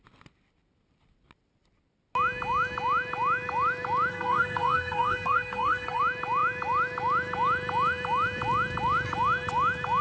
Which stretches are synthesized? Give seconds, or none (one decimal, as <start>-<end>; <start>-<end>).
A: 4.1-6.0